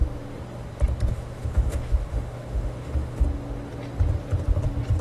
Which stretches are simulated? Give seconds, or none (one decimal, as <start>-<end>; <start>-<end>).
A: 1.1-3.2